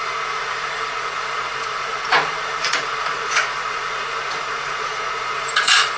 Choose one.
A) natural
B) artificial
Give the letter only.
B